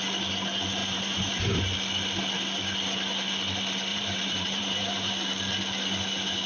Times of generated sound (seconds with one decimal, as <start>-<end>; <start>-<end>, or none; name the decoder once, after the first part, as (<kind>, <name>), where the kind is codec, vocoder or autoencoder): 0.8-1.6 (vocoder, BigVGAN v2); 3.9-5.1